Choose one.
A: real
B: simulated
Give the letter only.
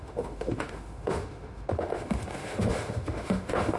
B